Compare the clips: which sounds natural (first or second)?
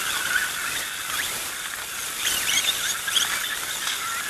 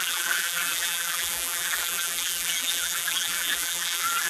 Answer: first